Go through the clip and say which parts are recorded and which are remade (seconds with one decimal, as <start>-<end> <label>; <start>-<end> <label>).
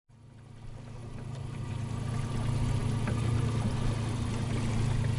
0.0-1.0 recorded; 1.0-1.7 remade; 1.7-5.2 recorded